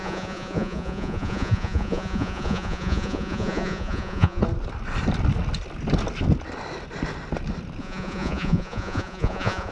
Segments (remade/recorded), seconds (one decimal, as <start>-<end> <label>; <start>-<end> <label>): 0.0-4.4 remade; 4.4-7.8 recorded; 7.8-9.7 remade